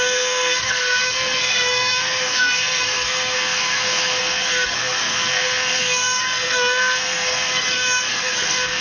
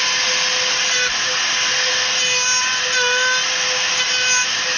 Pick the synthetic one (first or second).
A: first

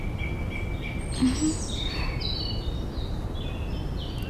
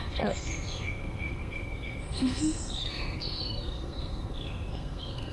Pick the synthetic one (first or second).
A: second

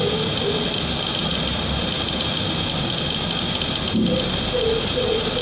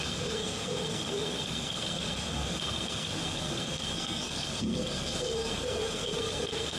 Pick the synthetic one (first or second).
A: second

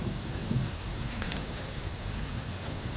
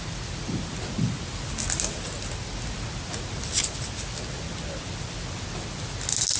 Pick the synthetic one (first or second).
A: first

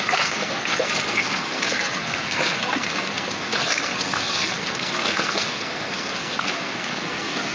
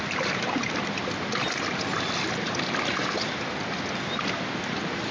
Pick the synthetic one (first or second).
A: first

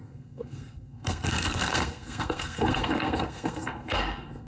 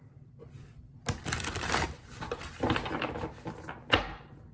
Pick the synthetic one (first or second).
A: first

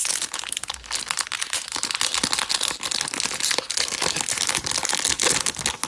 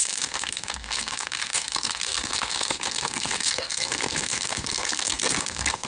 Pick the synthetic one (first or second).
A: second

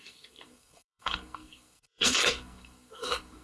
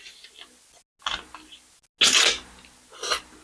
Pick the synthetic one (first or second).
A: first